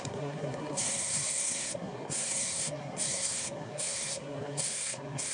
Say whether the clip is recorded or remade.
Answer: remade